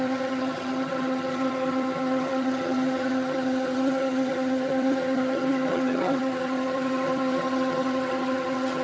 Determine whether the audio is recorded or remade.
remade